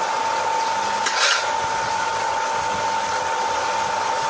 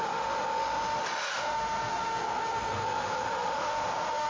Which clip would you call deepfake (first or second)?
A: second